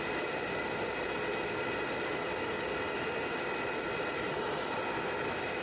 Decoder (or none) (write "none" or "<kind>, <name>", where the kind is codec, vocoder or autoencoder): none